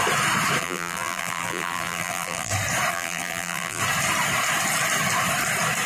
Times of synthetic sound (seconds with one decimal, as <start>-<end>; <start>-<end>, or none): 0.6-2.5; 2.9-3.8